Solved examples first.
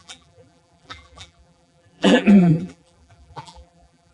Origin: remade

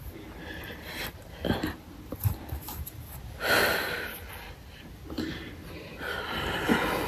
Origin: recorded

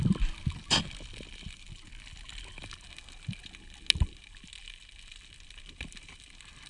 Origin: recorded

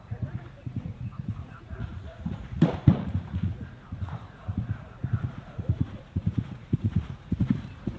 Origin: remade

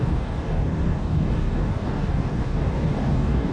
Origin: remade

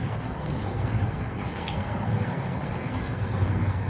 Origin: remade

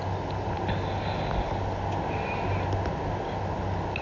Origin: recorded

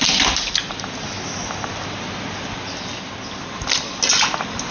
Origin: recorded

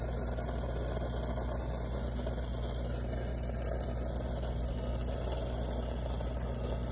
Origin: recorded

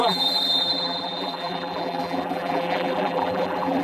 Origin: remade